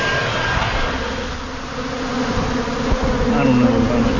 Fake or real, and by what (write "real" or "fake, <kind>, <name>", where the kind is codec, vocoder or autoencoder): real